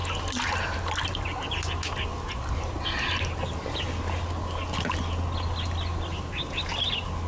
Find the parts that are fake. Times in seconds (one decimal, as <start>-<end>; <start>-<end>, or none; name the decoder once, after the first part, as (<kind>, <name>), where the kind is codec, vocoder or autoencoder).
none